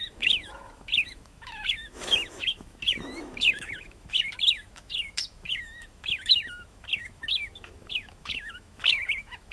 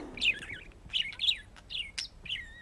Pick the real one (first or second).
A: second